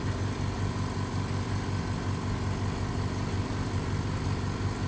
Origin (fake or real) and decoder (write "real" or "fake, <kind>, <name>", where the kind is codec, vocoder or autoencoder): real